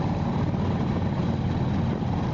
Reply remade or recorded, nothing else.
recorded